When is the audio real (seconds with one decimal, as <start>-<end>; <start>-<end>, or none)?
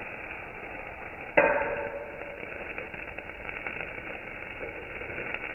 2.7-3.2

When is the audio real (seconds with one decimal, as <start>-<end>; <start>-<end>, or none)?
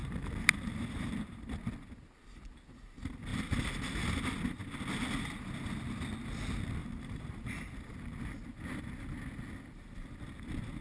1.5-6.8; 7.5-10.8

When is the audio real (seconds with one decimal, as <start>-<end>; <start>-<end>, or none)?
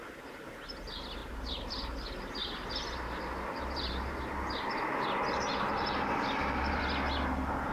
0.0-1.2; 1.9-2.4; 6.8-7.7